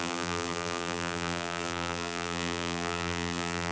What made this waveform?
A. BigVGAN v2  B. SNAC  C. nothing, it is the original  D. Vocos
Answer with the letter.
A